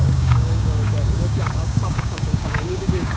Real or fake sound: fake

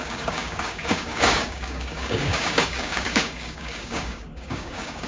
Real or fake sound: fake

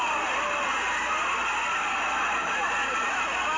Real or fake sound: real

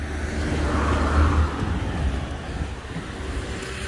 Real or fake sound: real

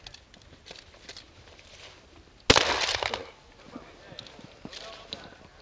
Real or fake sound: real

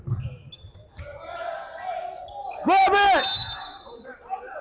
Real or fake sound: real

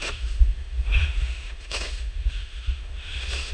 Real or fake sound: fake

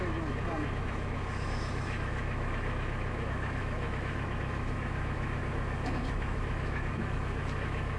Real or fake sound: fake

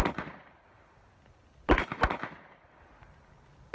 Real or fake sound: real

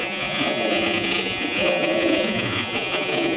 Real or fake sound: fake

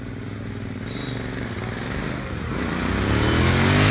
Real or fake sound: real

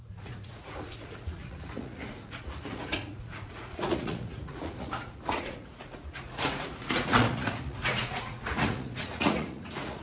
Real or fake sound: fake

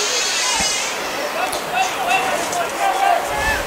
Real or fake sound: real